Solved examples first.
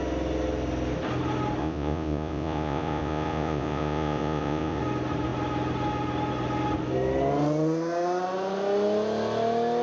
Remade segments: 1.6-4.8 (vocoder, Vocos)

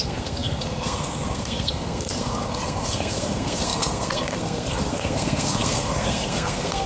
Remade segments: 0.0-6.9 (codec, SNAC)

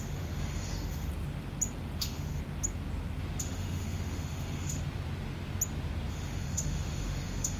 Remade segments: 0.0-1.1 (autoencoder, DAC-VAE); 2.0-2.4; 3.4-4.8; 6.1-7.6

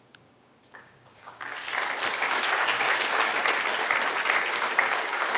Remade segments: 0.0-1.7 (codec, DAC); 2.2-3.3; 4.5-5.4

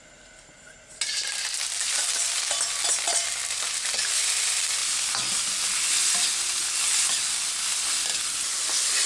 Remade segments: none